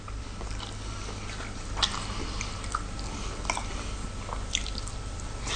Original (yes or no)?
yes